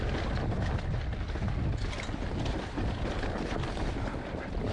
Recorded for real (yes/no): yes